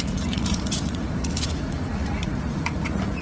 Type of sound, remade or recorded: remade